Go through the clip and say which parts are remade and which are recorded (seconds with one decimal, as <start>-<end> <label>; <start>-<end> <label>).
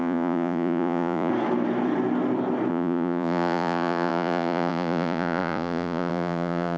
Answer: 0.0-1.3 remade; 1.3-2.7 recorded; 2.7-6.8 remade